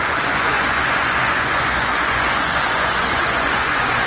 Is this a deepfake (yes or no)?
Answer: yes